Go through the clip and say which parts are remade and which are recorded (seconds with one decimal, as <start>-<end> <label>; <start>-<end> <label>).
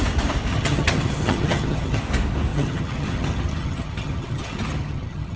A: 0.0-0.5 recorded; 0.5-2.0 remade; 2.0-2.5 recorded; 2.5-5.4 remade